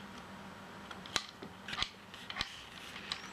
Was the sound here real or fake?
real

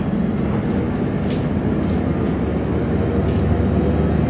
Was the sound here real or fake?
real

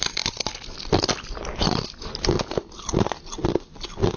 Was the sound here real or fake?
real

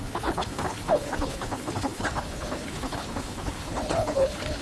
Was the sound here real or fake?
fake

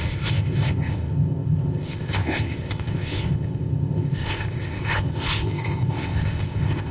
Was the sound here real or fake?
fake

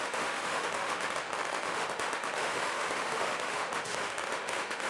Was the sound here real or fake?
fake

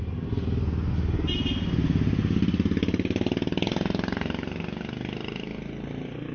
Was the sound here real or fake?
real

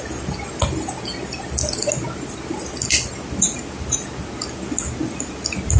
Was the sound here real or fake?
real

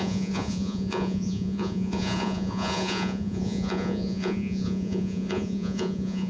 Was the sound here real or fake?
fake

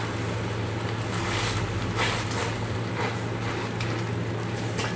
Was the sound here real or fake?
fake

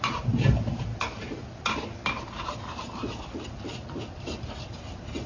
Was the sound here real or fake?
fake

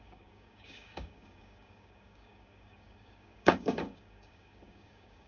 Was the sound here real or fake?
fake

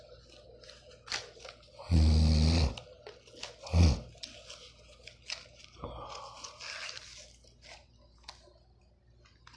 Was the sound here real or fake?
real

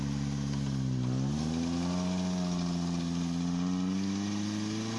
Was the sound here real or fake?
real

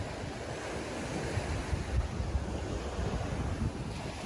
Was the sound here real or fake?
real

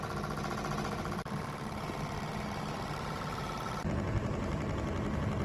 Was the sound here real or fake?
real